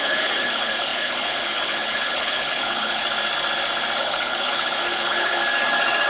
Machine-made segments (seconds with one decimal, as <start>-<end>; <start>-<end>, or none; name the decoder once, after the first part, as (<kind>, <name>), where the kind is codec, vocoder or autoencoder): 0.0-3.0 (codec, HILCodec); 4.0-5.4